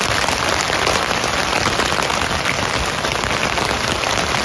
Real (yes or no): yes